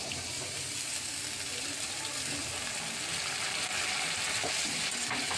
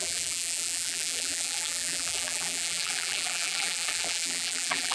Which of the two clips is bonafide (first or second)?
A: first